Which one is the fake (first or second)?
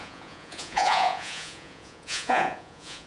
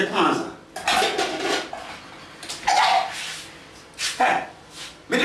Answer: first